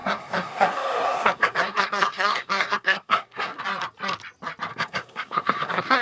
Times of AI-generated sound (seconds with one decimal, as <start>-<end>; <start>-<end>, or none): 0.0-3.6; 4.7-6.0